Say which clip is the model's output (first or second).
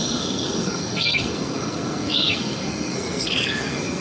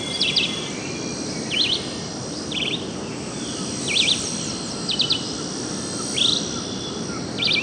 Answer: first